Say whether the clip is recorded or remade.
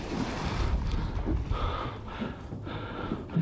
recorded